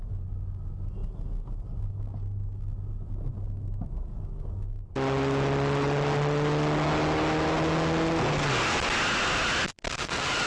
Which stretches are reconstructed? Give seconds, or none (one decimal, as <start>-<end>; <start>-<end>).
none